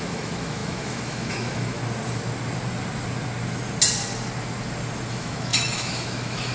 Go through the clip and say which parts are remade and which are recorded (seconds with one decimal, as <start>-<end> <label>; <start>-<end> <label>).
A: 0.0-1.8 remade; 1.8-5.1 recorded; 5.1-6.5 remade